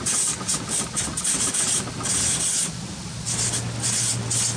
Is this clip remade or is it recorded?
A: recorded